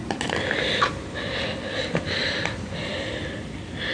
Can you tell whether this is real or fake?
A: real